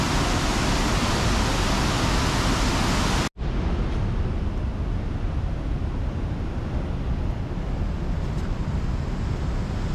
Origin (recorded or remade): recorded